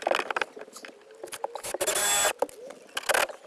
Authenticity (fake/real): real